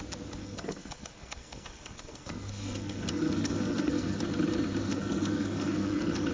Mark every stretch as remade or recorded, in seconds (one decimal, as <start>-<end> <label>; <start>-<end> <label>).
0.0-0.4 recorded; 0.4-4.2 remade; 4.2-4.8 recorded; 4.8-6.3 remade